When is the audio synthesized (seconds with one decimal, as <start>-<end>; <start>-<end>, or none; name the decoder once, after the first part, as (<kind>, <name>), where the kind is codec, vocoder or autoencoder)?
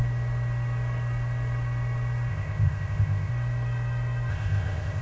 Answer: 2.3-3.3 (codec, ZipCodec); 4.3-5.0